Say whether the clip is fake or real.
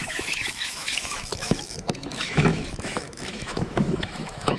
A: fake